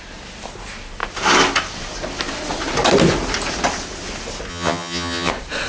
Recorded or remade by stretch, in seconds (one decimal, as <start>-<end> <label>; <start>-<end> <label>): 0.0-4.5 recorded; 4.5-5.3 remade; 5.3-5.7 recorded